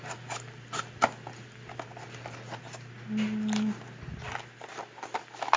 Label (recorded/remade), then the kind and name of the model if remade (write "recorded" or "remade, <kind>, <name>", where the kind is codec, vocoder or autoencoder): recorded